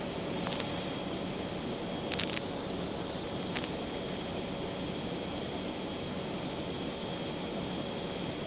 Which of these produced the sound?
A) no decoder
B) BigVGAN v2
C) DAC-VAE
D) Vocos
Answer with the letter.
A